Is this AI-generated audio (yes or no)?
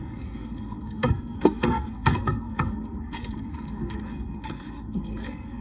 yes